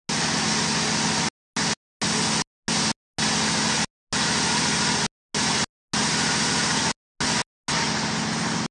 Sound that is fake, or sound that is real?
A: real